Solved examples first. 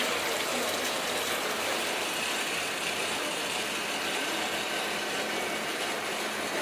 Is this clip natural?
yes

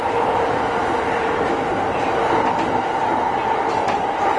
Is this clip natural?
yes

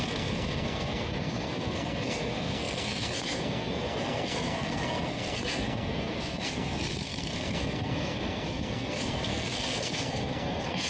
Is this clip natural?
no